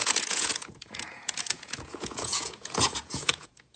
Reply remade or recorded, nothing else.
remade